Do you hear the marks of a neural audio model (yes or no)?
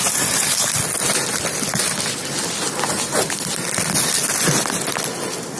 no